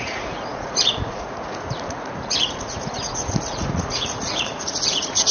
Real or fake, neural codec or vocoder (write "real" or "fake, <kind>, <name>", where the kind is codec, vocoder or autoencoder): fake, vocoder, Vocos